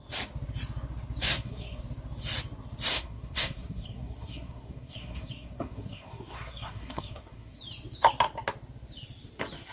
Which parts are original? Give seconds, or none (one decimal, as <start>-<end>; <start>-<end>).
0.0-1.3; 1.8-2.9; 7.6-9.7